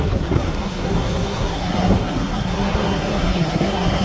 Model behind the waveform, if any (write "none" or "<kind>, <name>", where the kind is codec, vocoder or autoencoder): codec, SNAC